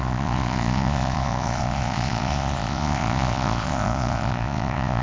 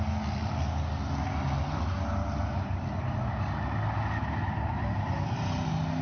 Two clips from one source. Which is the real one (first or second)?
second